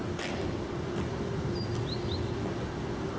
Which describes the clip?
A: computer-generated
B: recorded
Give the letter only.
B